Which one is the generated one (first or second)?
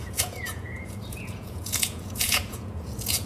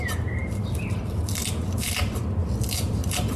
first